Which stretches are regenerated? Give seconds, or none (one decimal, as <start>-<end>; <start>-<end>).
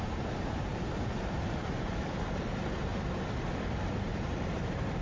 0.0-2.9; 3.9-5.0